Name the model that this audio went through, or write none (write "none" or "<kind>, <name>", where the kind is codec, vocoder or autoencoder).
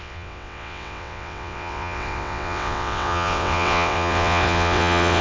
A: vocoder, WaveNeXt